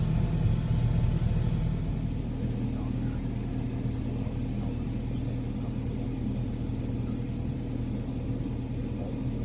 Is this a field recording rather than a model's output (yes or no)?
yes